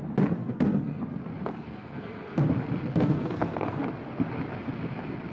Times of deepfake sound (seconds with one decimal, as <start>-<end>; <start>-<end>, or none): 0.4-1.0; 1.5-2.4; 2.9-3.8